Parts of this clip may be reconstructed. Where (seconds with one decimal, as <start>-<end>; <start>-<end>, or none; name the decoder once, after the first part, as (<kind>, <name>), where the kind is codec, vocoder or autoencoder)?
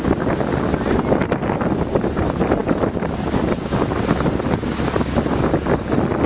none